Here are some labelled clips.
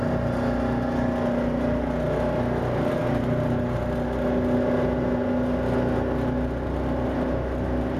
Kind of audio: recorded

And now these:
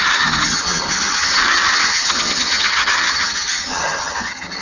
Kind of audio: remade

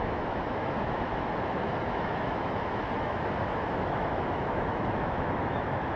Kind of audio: remade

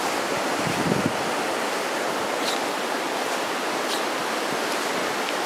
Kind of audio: recorded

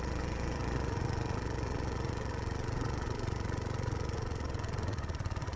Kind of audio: remade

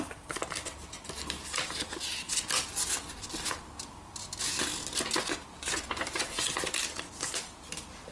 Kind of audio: recorded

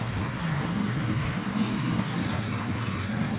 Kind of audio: remade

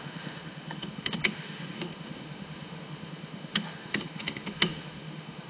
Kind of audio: remade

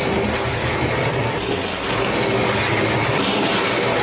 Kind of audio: recorded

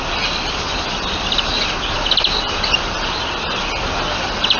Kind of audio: recorded